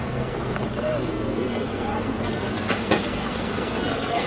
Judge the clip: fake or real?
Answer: fake